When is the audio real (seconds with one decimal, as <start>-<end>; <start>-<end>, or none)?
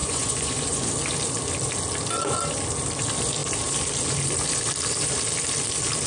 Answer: 0.9-6.1